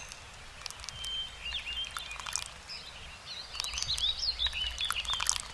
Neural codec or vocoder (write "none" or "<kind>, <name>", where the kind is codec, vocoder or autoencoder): none